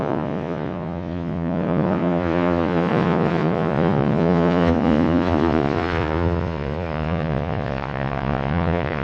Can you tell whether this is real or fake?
fake